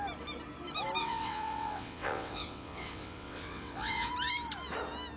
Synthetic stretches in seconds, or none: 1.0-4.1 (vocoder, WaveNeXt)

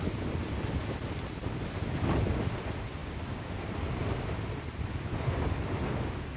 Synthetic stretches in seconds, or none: 3.0-3.6 (codec, DAC)

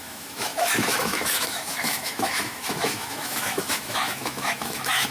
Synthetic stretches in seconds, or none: 0.0-5.1 (autoencoder, DAC-VAE)

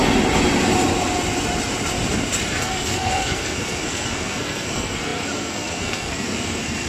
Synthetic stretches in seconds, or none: 2.6-6.9 (codec, SNAC)

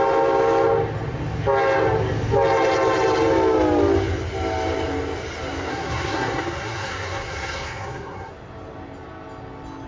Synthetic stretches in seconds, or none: 5.7-8.3 (codec, SNAC)

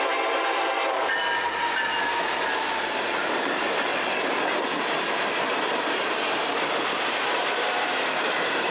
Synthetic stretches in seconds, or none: 0.0-1.2 (vocoder, BigVGAN v2); 3.0-3.9; 7.1-8.7